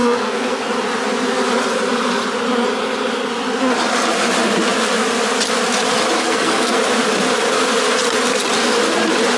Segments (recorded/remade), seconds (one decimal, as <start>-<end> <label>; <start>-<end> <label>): 0.0-0.7 remade; 0.7-6.2 recorded; 6.2-6.8 remade; 6.8-9.4 recorded